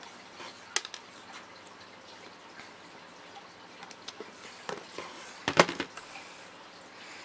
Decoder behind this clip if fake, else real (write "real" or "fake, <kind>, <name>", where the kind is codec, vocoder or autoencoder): real